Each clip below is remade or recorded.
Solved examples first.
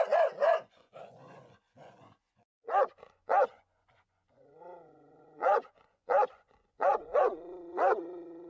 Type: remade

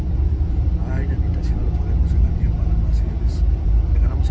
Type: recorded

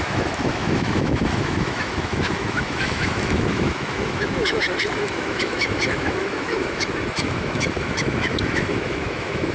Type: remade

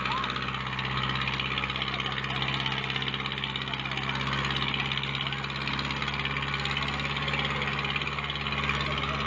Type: recorded